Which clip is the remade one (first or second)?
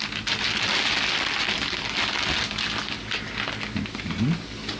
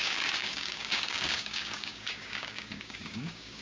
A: second